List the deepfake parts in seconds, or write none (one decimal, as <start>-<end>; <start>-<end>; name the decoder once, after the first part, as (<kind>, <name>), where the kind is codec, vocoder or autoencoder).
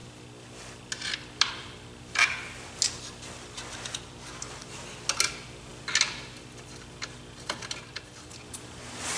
none